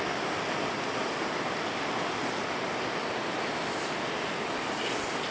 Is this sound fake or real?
real